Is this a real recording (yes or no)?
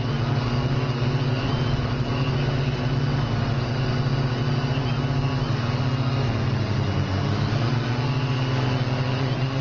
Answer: yes